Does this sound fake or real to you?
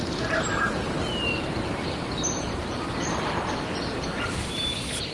real